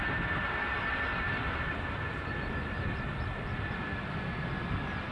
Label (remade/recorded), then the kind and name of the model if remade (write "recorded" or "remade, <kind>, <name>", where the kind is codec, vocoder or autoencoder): recorded